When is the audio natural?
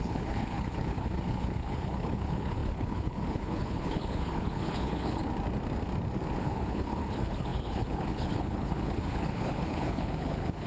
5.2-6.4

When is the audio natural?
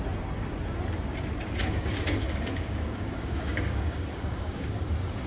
0.0-1.6; 4.8-5.3